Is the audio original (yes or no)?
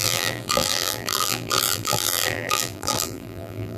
no